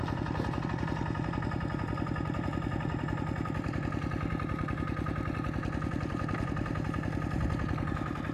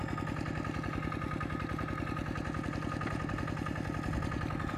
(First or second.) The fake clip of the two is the first